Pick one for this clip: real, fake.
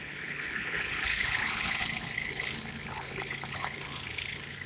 fake